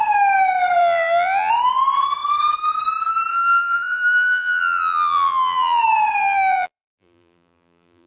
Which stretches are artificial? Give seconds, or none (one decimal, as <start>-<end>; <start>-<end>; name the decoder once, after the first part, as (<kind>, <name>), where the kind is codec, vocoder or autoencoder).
0.8-1.5 (vocoder, BigVGAN v2); 3.3-5.8; 6.2-8.1